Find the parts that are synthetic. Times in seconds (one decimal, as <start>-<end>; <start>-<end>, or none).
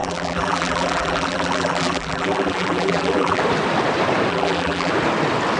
0.0-3.4; 4.3-4.9